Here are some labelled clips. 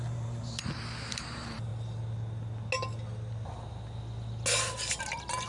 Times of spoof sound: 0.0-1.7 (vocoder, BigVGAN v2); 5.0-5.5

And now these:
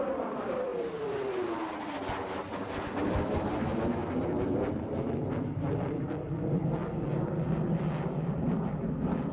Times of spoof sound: none

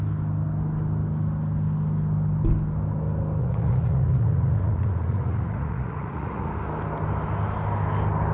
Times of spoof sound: 3.4-6.5 (vocoder, Vocos)